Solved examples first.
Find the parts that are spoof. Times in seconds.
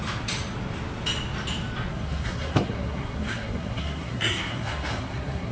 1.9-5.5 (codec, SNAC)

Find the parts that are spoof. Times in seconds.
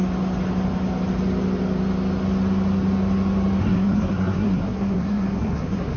3.6-6.0 (codec, SNAC)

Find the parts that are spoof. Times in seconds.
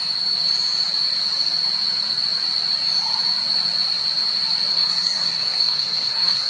4.7-6.5 (codec, SNAC)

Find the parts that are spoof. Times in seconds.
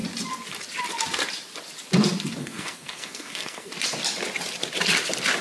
2.4-3.7 (codec, SNAC)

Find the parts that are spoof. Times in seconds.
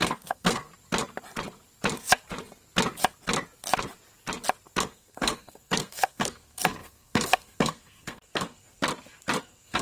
0.0-0.7 (codec, SNAC); 4.8-8.8; 9.4-9.8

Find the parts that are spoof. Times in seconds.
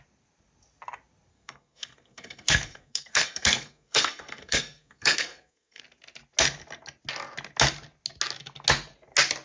1.3-5.8 (codec, SNAC)